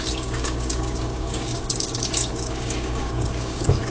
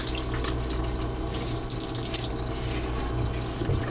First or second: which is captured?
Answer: second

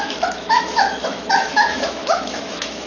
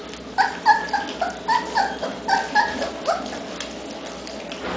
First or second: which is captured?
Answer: second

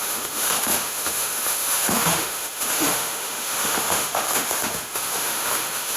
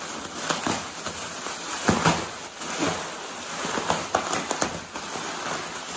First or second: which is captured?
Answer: second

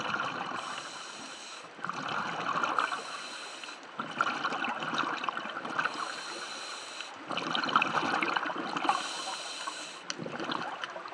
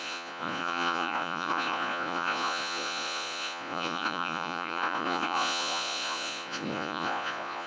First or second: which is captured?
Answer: first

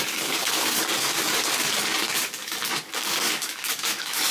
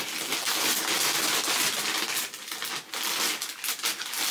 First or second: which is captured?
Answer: second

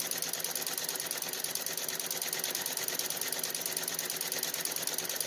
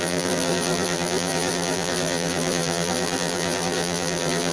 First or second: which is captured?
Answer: first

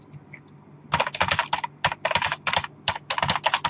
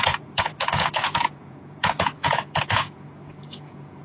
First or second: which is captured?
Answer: first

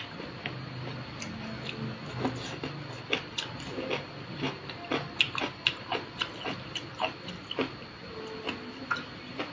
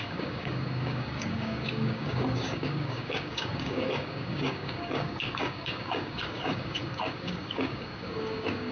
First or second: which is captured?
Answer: first